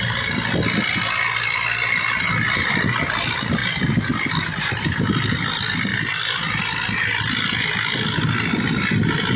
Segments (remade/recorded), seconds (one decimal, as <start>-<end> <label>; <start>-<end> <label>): 0.0-9.4 recorded